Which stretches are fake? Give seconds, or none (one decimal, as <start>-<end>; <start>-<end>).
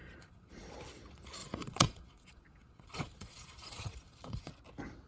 0.0-0.7; 1.4-4.5